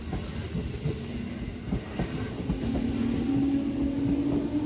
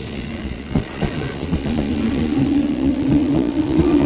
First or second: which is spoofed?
second